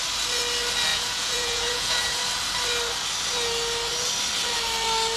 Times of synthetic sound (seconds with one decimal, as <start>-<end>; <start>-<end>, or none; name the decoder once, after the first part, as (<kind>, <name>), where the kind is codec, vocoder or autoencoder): 0.9-2.2 (vocoder, Vocos)